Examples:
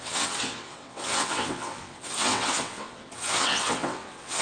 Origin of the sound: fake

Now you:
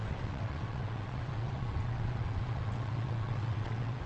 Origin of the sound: fake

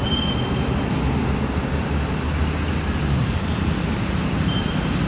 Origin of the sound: real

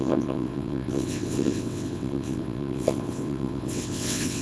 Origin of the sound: fake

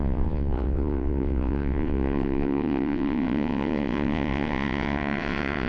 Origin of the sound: fake